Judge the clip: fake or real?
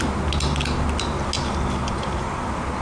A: real